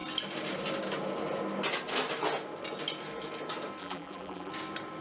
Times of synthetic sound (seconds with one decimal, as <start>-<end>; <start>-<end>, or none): 3.8-4.5